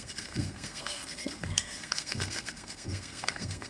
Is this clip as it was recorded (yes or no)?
no